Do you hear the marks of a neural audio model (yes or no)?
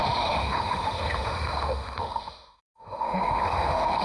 yes